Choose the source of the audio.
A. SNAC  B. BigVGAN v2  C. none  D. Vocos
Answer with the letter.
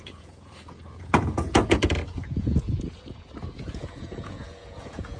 D